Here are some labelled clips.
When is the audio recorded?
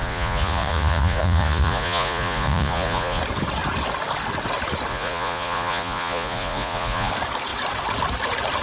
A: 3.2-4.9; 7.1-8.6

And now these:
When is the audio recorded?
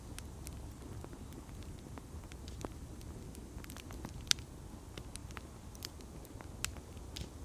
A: 0.0-7.4